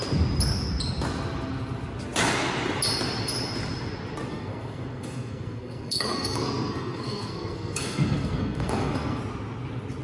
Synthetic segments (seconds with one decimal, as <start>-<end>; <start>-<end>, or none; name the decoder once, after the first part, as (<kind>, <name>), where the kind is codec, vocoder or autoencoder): 4.3-9.2 (codec, SNAC)